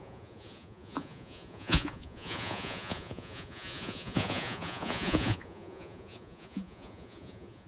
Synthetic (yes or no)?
yes